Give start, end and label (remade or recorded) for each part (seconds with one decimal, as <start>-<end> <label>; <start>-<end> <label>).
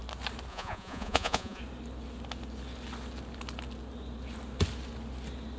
0.0-0.5 recorded; 0.5-1.6 remade; 1.6-5.6 recorded